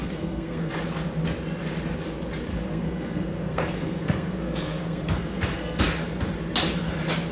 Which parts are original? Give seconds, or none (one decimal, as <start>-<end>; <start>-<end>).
0.7-2.5; 5.8-7.3